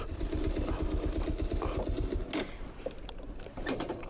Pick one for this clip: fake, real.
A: real